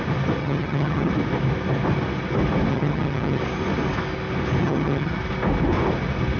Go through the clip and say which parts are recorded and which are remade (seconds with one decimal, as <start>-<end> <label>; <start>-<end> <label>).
0.0-0.4 recorded; 0.4-1.1 remade; 1.1-2.7 recorded; 2.7-3.4 remade; 3.4-4.6 recorded; 4.6-5.2 remade; 5.2-6.4 recorded